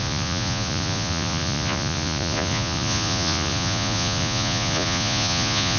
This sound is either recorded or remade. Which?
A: remade